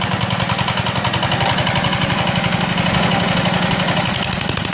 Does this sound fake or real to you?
real